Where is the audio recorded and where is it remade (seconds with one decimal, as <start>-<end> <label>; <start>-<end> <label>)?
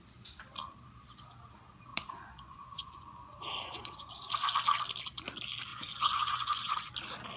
0.0-1.9 recorded; 1.9-4.1 remade; 4.1-5.7 recorded; 5.7-6.9 remade; 6.9-7.4 recorded